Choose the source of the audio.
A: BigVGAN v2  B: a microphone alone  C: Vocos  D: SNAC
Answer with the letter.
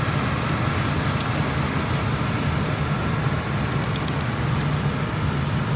B